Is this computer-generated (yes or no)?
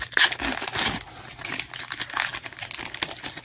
no